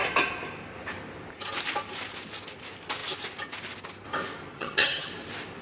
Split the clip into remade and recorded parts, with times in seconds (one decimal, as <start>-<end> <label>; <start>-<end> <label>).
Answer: 0.0-4.5 recorded; 4.5-5.1 remade; 5.1-5.6 recorded